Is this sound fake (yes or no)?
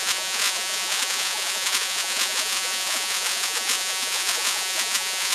yes